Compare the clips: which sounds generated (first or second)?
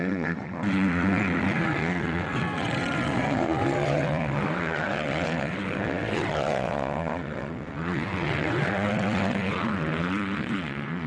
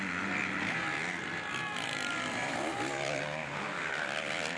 first